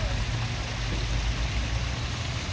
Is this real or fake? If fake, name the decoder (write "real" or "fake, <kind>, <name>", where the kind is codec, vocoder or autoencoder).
real